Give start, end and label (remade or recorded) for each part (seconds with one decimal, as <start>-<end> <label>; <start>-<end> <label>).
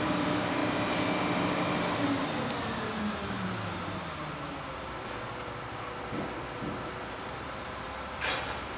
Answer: 0.0-0.6 remade; 0.6-2.6 recorded; 2.6-4.2 remade; 4.2-7.0 recorded; 7.0-8.8 remade